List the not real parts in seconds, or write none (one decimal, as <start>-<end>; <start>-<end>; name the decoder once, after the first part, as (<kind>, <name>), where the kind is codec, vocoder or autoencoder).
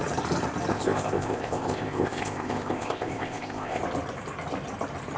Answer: 0.7-3.8 (codec, ZipCodec)